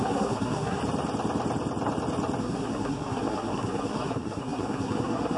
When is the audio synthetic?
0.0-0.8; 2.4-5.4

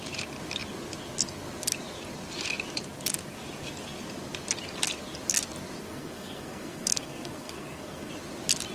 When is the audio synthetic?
5.8-8.1

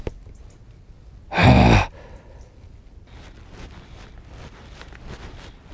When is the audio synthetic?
none

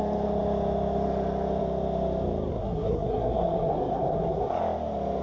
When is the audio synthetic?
2.5-4.6